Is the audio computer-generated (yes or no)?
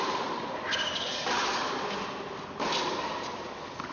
no